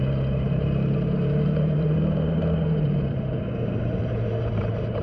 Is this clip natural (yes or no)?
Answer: no